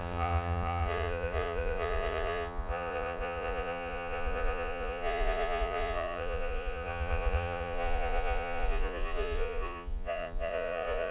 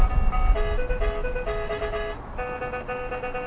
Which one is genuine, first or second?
second